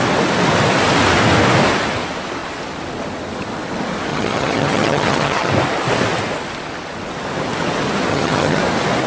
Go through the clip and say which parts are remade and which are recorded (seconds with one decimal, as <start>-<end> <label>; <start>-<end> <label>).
0.0-4.1 recorded; 4.1-5.5 remade; 5.5-8.1 recorded; 8.1-8.6 remade; 8.6-9.1 recorded